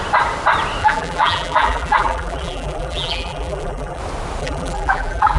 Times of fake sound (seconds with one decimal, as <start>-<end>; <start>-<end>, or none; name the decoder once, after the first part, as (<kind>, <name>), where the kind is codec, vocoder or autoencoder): 0.8-4.0 (vocoder, BigVGAN v2); 4.4-5.4